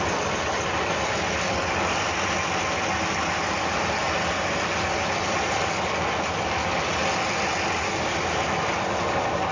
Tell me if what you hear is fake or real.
real